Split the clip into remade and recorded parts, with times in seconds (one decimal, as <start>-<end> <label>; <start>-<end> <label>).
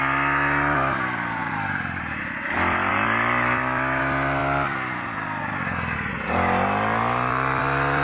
0.0-8.0 recorded